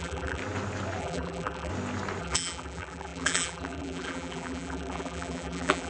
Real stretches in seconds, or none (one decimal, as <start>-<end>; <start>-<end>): 0.4-1.0; 1.7-2.2